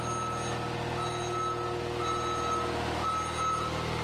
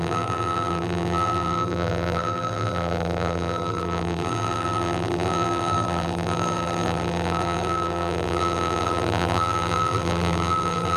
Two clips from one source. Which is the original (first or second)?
first